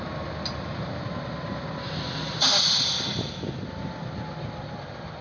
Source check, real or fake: real